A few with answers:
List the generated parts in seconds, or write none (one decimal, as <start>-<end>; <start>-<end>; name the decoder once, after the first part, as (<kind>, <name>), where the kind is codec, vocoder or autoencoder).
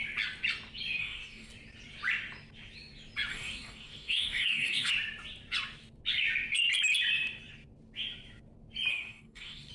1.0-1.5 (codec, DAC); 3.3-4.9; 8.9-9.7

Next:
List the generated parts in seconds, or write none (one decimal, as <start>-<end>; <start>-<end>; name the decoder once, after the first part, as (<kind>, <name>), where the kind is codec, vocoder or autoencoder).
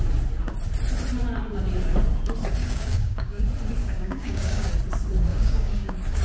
2.6-3.4 (codec, DAC); 3.8-4.7; 5.3-6.2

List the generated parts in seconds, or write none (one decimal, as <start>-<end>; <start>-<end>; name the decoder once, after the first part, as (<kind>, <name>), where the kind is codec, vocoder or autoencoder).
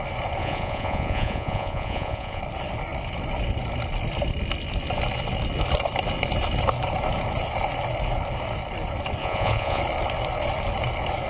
0.4-2.4 (vocoder, Vocos); 9.2-9.8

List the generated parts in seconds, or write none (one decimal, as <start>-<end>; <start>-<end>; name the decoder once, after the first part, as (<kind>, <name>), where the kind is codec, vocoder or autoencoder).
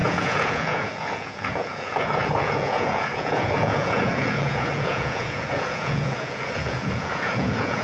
0.0-7.8 (vocoder, Vocos)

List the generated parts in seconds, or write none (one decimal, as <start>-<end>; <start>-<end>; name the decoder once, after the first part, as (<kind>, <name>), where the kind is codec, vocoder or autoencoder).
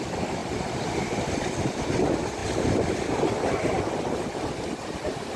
none